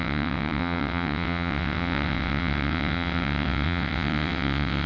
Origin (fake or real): fake